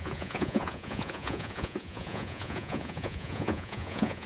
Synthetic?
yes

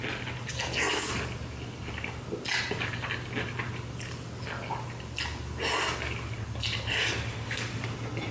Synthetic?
no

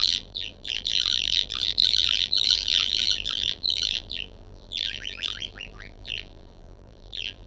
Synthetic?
yes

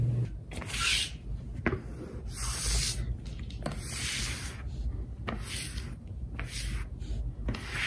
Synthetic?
no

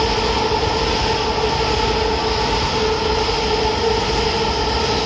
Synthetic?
no